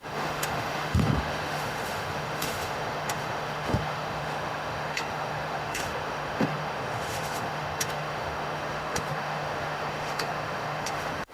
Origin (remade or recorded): remade